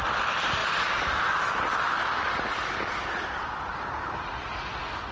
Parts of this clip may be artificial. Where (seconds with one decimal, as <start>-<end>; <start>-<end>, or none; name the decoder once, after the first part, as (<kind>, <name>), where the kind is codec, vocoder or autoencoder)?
3.7-4.6 (vocoder, BigVGAN v2)